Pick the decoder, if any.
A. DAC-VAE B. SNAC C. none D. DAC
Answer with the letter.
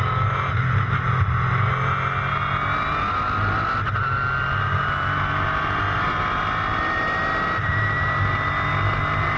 C